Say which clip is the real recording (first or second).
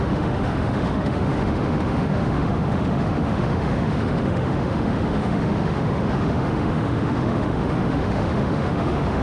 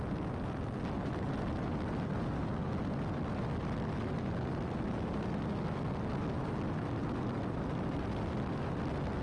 second